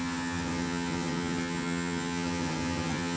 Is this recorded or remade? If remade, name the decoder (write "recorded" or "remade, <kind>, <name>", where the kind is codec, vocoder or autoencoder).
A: remade, vocoder, HiFi-GAN